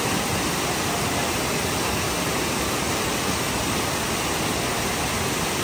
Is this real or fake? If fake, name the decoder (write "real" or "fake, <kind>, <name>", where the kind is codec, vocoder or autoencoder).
real